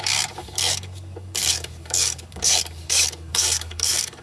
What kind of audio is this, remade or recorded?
remade